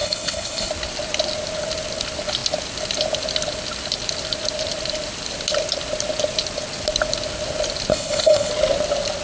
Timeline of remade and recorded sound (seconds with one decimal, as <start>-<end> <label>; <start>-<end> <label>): 0.0-0.7 remade; 0.7-7.9 recorded; 7.9-8.5 remade; 8.5-9.2 recorded